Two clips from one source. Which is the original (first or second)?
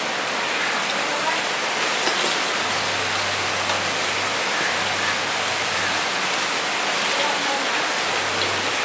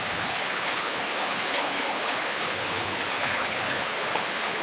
first